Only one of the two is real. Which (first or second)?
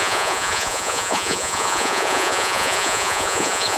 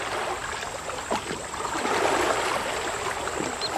second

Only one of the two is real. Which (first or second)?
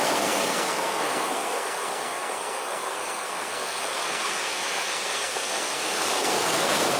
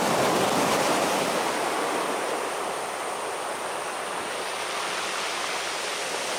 second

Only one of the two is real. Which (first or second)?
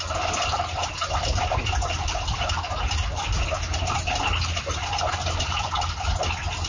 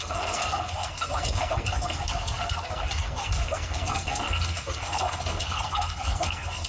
first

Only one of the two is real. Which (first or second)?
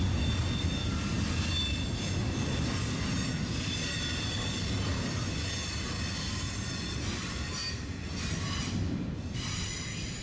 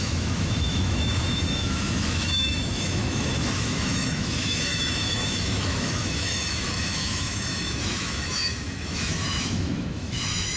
first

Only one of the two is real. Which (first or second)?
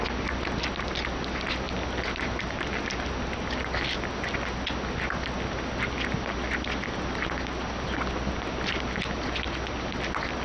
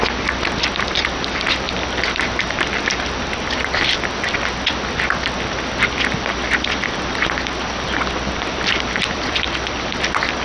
first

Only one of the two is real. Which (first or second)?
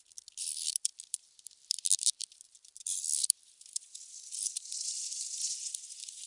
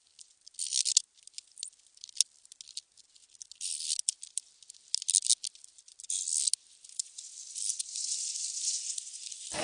second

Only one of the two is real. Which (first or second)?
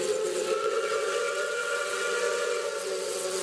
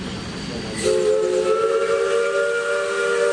second